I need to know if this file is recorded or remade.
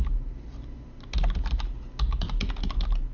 recorded